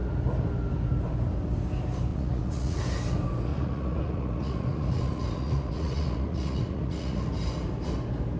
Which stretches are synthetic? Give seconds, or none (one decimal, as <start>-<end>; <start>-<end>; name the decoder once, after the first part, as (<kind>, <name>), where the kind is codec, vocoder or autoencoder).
2.1-2.8 (vocoder, Vocos); 3.5-7.3

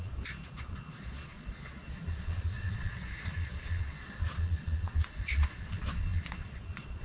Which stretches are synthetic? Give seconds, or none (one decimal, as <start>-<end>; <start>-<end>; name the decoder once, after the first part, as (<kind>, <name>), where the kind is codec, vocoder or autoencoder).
0.0-7.0 (vocoder, Vocos)